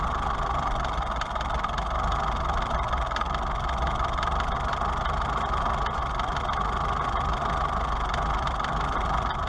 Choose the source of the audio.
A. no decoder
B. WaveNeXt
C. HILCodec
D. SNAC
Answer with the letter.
A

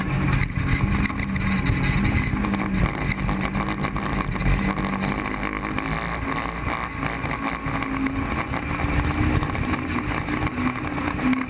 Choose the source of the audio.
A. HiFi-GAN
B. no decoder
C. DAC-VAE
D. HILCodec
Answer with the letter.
B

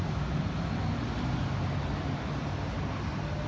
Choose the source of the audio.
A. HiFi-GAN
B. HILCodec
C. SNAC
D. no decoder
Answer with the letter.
D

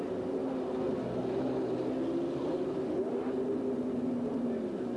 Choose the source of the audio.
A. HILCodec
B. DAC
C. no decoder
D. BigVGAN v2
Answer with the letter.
C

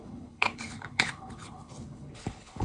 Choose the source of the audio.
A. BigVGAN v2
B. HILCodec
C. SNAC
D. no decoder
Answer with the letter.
B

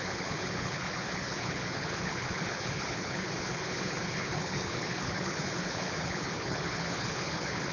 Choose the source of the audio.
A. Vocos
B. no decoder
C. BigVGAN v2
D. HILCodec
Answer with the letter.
D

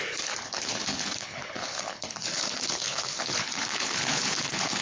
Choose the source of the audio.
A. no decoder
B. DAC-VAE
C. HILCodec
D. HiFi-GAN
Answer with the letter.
C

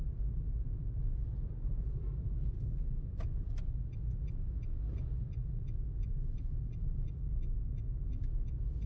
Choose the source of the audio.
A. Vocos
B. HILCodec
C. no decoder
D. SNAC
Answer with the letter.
C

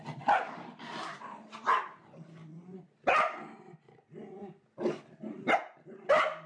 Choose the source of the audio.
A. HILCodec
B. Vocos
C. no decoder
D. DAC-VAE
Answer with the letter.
C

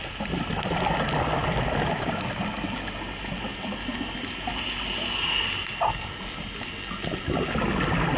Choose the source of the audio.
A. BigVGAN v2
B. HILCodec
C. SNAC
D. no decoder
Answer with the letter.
D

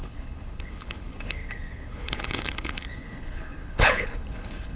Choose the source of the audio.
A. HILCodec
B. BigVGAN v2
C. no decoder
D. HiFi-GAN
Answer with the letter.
A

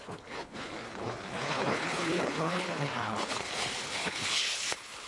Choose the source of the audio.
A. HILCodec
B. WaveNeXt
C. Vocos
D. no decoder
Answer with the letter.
A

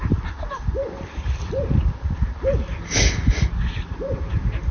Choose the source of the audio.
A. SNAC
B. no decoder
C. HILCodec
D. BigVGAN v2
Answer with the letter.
B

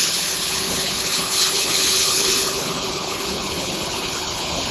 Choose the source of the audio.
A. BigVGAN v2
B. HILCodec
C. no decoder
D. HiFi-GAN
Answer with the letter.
B